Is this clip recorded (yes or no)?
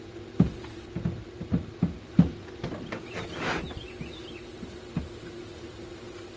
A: yes